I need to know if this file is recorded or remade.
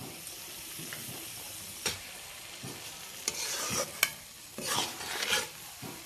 recorded